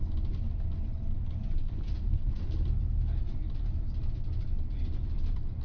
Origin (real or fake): real